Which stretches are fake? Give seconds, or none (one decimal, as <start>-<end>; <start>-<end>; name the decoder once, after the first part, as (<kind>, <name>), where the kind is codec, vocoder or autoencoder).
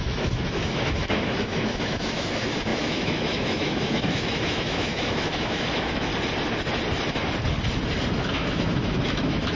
0.0-6.1 (autoencoder, DAC-VAE); 8.2-9.5